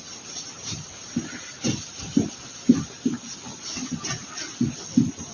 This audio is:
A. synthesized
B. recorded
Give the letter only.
B